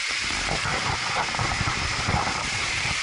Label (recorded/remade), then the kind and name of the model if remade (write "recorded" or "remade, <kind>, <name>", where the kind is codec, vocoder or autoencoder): remade, vocoder, BigVGAN v2